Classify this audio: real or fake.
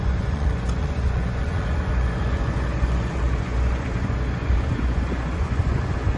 fake